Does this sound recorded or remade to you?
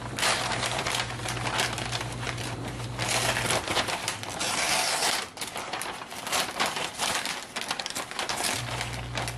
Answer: remade